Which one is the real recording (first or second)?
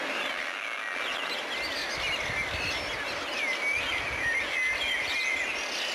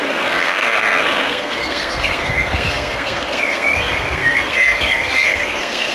first